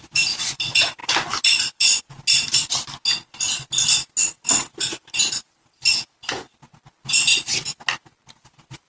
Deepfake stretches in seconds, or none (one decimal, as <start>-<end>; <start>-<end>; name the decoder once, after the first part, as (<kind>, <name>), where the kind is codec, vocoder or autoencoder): none